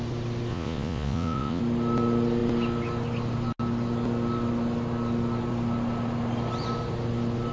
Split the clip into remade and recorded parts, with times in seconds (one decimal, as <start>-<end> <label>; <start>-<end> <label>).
0.0-0.5 recorded; 0.5-1.6 remade; 1.6-7.5 recorded